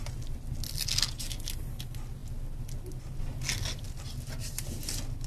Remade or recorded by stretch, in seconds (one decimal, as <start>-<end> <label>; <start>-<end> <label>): 0.0-5.3 recorded